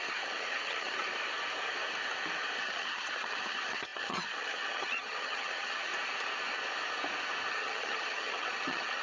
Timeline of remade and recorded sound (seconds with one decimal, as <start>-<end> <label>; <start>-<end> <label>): 0.0-1.1 remade; 1.1-2.6 recorded; 2.6-5.9 remade; 5.9-7.5 recorded; 7.5-9.0 remade